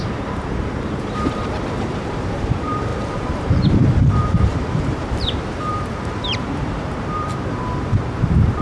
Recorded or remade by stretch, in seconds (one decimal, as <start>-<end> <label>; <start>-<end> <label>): 0.0-8.6 remade